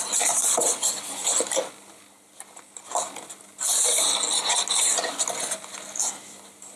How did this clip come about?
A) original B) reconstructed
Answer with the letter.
A